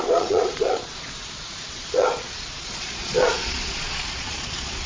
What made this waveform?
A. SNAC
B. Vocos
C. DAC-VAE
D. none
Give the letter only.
B